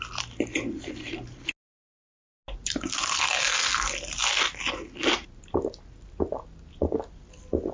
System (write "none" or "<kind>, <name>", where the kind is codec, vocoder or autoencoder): none